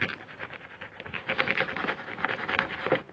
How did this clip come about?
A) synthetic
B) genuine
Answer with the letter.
B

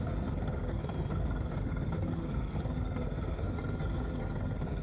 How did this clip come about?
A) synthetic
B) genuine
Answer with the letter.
A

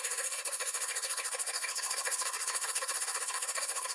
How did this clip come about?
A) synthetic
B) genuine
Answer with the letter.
A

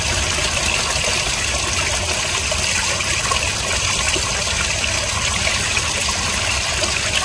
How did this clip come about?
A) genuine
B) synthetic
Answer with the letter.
A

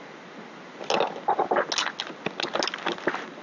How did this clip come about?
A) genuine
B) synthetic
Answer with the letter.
A